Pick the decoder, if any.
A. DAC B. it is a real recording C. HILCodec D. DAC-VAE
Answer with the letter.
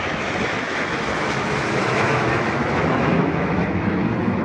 D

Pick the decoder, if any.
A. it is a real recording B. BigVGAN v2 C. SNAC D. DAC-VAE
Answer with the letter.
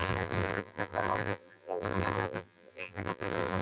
B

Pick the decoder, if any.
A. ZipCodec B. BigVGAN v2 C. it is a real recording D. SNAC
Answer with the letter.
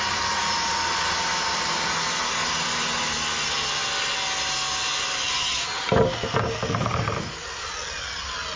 C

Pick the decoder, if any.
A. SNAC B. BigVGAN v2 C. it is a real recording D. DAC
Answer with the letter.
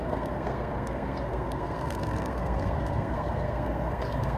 A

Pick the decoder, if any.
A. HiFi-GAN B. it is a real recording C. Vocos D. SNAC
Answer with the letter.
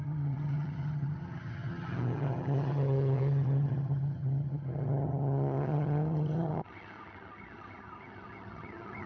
A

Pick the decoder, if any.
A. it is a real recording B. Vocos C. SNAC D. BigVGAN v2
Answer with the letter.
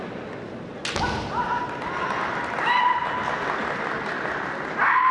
A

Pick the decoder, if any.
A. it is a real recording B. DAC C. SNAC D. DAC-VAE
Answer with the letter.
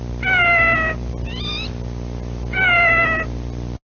A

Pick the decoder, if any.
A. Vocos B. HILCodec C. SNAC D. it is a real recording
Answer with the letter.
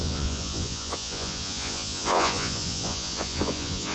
A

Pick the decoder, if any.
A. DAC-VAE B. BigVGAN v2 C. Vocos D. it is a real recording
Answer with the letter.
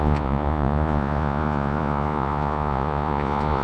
C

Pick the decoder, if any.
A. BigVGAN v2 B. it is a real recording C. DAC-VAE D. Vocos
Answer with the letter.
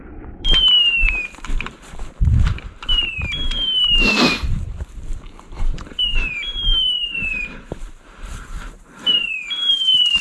A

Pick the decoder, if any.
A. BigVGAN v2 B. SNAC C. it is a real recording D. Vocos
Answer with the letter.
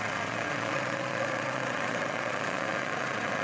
D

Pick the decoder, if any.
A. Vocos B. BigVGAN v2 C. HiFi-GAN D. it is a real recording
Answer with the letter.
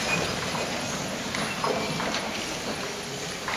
D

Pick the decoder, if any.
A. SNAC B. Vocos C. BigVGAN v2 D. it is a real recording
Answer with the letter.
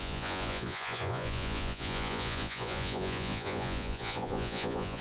B